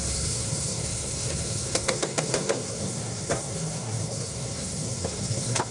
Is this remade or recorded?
remade